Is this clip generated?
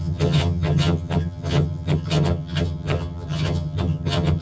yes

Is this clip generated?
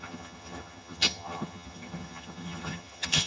yes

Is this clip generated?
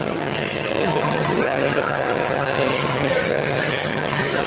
yes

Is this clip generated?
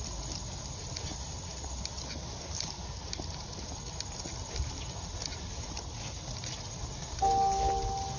no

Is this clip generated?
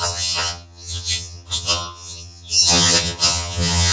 yes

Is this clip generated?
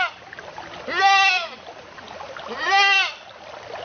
no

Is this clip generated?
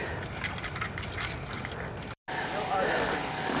no